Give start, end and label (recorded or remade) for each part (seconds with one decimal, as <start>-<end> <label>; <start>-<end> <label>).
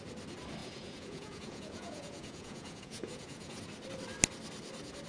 0.0-0.6 recorded; 0.6-3.6 remade; 3.6-5.1 recorded